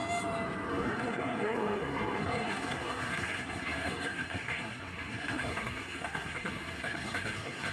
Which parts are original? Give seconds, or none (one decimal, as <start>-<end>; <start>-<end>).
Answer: 0.0-0.7